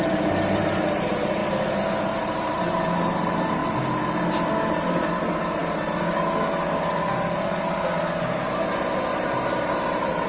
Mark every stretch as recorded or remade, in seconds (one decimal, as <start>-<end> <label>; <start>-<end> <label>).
0.0-1.4 remade; 1.4-2.1 recorded; 2.1-3.6 remade; 3.6-4.5 recorded; 4.5-5.6 remade; 5.6-9.1 recorded; 9.1-10.3 remade